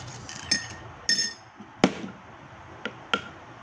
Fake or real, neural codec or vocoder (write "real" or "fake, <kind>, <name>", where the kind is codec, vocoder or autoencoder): real